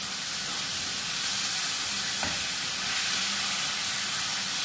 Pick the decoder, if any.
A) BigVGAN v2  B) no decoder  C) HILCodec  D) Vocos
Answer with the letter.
B